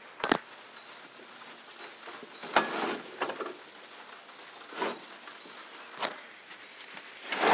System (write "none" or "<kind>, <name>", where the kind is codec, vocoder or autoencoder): none